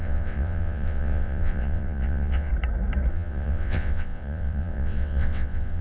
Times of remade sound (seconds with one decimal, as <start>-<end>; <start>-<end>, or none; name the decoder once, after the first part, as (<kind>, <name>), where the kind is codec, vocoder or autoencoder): 0.0-2.5 (vocoder, WaveNeXt); 3.1-5.8